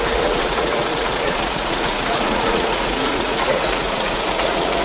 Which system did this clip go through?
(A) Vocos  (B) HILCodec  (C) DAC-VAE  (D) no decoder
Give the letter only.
A